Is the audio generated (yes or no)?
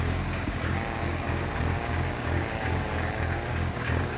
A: yes